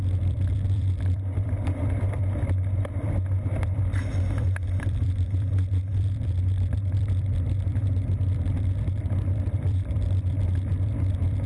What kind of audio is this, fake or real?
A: fake